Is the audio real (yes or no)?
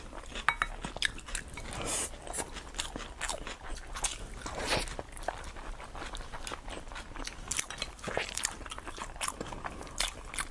yes